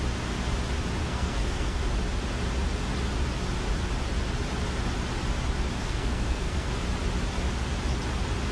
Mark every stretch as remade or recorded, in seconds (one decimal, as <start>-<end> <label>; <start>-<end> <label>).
0.0-1.0 recorded; 1.0-1.8 remade; 1.8-5.8 recorded; 5.8-6.7 remade; 6.7-8.5 recorded

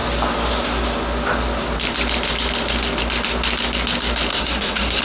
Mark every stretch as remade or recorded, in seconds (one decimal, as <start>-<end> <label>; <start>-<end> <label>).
0.0-4.3 recorded; 4.3-5.0 remade

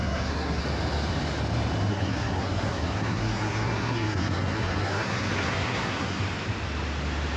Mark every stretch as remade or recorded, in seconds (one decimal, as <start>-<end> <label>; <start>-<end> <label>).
0.0-0.6 remade; 0.6-1.9 recorded; 1.9-6.2 remade; 6.2-7.4 recorded